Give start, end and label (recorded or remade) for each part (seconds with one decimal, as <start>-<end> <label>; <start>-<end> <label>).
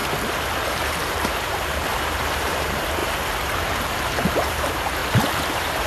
0.0-0.7 recorded; 0.7-3.0 remade; 3.0-4.2 recorded; 4.2-5.0 remade; 5.0-5.9 recorded